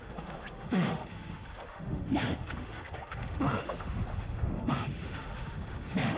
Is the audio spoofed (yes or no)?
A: yes